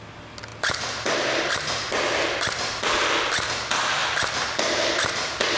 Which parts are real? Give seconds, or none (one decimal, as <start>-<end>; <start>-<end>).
0.0-0.5; 3.5-5.6